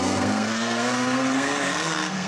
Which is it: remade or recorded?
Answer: remade